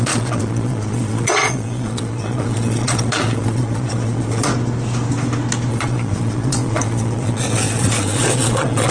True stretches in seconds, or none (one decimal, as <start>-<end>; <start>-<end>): 4.5-5.7